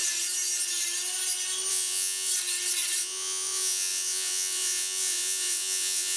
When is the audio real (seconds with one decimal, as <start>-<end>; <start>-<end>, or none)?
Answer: 0.0-1.7; 2.3-3.0